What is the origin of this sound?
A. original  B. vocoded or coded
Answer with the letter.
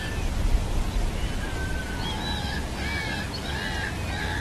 A